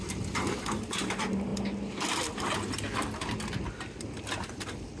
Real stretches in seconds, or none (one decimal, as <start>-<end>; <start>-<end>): 0.0-5.0